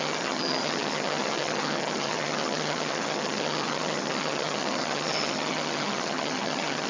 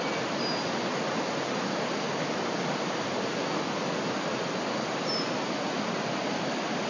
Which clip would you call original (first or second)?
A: second